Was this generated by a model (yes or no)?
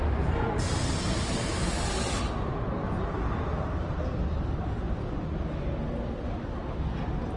no